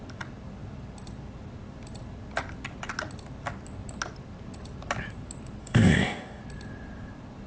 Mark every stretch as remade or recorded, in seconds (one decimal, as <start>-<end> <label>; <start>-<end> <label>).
0.0-5.6 recorded; 5.6-6.4 remade; 6.4-7.5 recorded